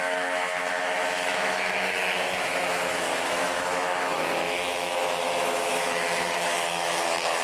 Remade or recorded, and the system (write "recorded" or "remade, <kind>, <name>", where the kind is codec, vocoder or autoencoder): remade, autoencoder, DAC-VAE